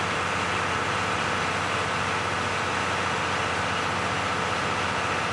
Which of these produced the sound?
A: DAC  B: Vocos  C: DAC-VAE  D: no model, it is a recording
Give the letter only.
D